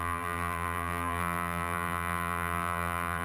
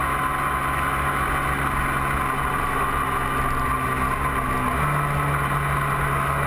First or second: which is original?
second